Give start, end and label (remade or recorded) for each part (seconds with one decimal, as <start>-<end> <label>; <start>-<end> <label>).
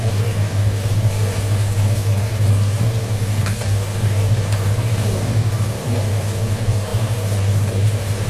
0.0-8.3 remade